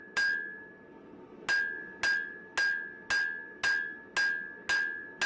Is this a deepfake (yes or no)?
no